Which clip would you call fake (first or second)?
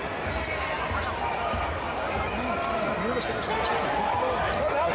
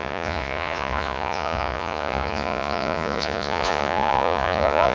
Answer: second